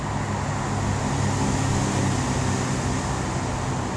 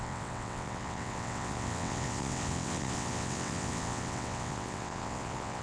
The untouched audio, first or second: first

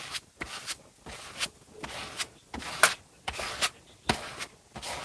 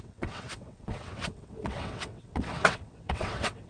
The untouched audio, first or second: first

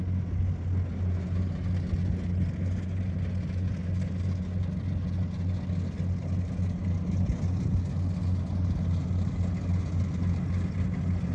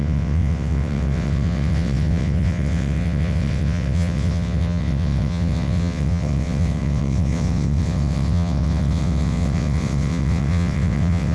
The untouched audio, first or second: first